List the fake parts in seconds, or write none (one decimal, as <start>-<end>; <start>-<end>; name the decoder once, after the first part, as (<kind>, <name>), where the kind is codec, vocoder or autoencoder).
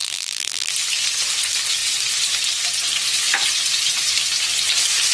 0.0-0.7 (vocoder, BigVGAN v2)